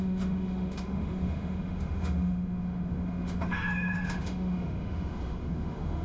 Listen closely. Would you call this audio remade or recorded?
remade